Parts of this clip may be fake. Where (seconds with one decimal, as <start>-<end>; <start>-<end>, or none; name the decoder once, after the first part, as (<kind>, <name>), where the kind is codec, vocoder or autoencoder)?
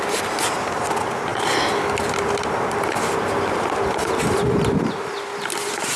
none